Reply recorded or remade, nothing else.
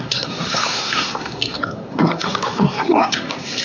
remade